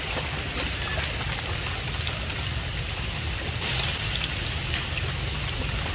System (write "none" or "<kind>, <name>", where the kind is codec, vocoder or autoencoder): none